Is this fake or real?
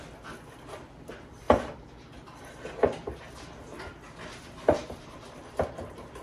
real